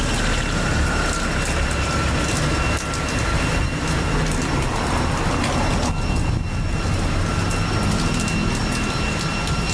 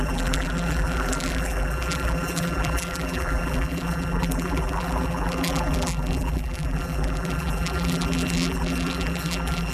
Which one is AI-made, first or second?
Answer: second